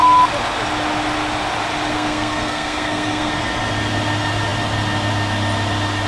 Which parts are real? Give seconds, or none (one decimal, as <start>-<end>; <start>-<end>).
0.0-1.9; 3.3-6.1